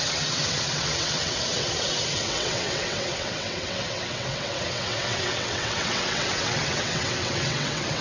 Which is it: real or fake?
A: fake